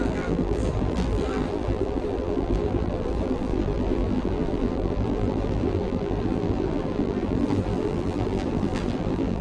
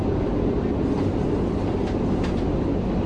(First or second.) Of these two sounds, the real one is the second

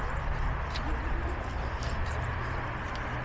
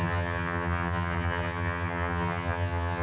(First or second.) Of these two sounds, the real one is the first